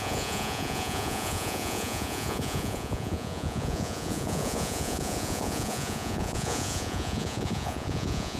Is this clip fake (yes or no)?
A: yes